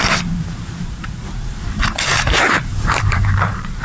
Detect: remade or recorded remade